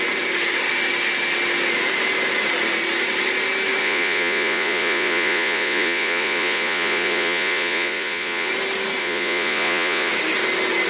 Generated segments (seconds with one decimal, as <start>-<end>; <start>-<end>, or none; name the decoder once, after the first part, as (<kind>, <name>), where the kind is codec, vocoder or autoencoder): 3.8-8.5 (vocoder, Vocos); 9.0-10.1